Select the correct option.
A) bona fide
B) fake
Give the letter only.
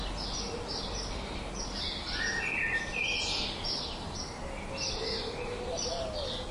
A